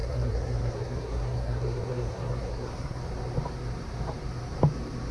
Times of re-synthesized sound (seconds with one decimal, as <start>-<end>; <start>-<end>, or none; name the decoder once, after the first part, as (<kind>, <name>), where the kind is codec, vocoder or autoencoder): 0.0-3.0 (codec, SNAC)